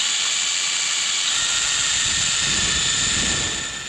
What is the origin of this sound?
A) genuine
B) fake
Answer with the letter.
A